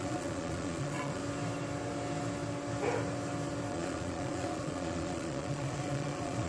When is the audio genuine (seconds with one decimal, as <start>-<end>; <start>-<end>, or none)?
1.2-3.7